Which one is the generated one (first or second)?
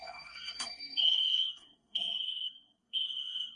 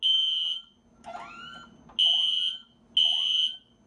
first